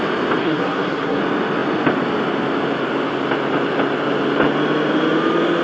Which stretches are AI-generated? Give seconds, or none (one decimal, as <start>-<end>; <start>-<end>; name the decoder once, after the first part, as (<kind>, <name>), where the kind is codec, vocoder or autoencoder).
0.4-1.2 (codec, SNAC)